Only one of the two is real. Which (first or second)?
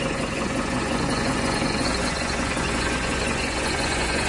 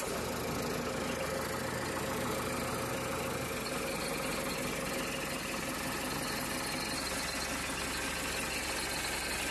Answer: second